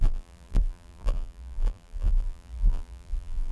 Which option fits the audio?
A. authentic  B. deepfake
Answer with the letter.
B